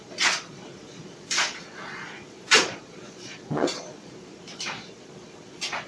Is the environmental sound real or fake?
fake